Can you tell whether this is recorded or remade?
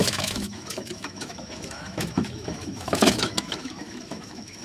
remade